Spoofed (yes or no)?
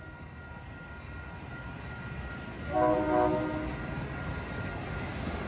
no